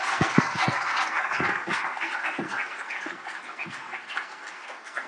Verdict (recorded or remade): remade